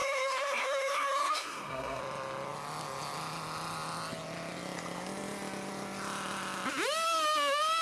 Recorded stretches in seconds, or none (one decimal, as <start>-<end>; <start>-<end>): 2.0-7.8

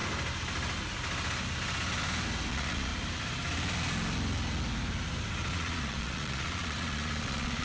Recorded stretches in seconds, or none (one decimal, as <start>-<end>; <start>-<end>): 0.0-2.5; 2.9-5.5